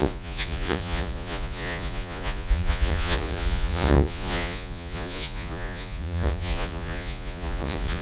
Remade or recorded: remade